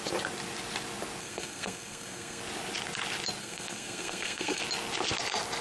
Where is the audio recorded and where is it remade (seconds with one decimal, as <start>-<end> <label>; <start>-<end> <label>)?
0.0-1.2 recorded; 1.2-2.4 remade; 2.4-3.4 recorded; 3.4-4.6 remade; 4.6-5.6 recorded